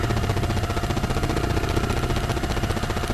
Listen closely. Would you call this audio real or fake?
real